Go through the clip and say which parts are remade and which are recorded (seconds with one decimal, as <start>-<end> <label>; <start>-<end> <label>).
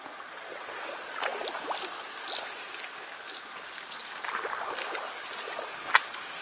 0.0-6.4 recorded